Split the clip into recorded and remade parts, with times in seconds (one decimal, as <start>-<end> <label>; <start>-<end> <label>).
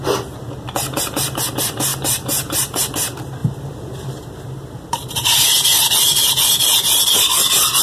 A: 0.0-1.9 recorded; 1.9-2.8 remade; 2.8-3.4 recorded; 3.4-6.3 remade; 6.3-7.8 recorded